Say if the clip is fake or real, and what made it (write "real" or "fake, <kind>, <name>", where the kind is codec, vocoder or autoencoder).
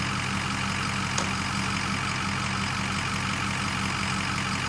real